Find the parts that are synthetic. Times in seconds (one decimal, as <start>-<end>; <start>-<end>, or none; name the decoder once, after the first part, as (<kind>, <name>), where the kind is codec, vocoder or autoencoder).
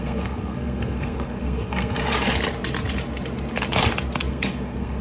0.0-2.0 (codec, SNAC); 4.3-5.0